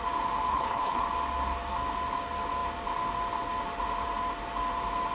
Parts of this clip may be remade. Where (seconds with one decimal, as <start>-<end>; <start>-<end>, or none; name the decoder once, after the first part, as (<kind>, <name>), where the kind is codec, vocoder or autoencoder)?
0.5-1.0 (codec, HILCodec)